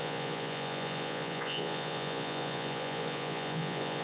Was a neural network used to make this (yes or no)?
yes